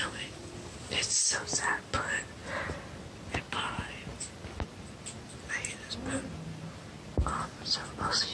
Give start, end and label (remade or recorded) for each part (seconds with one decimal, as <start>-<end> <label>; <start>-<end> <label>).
0.0-8.3 recorded